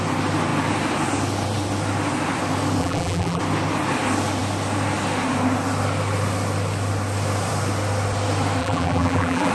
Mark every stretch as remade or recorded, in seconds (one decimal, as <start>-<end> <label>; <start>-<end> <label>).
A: 0.0-2.8 recorded; 2.8-3.4 remade; 3.4-8.6 recorded; 8.6-9.5 remade